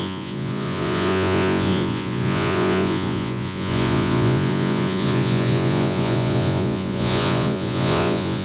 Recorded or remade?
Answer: remade